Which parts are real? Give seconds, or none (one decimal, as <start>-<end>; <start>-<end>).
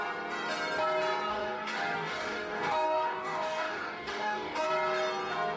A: 0.0-1.3; 4.7-5.6